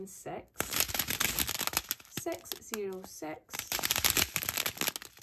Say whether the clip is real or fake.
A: real